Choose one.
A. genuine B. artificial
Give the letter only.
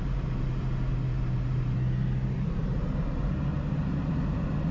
A